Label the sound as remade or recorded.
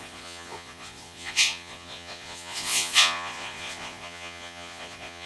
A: remade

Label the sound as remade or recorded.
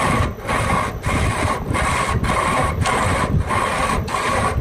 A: recorded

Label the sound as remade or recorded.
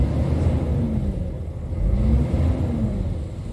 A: recorded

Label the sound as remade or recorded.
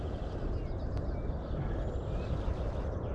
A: recorded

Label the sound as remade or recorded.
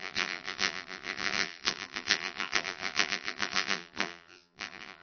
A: remade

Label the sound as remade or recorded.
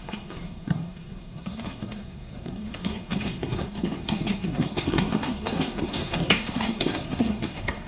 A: remade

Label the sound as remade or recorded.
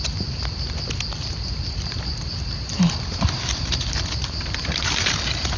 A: recorded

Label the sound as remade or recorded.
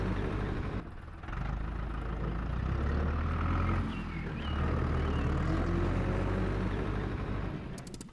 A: recorded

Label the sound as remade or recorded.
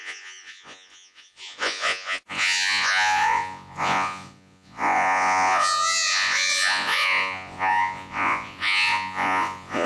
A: remade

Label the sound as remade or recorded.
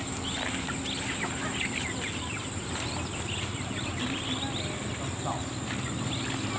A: recorded